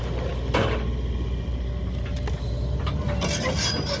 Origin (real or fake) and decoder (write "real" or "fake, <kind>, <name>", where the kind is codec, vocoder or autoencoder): real